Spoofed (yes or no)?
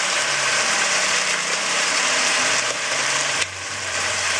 yes